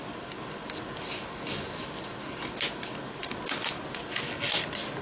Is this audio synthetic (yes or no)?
no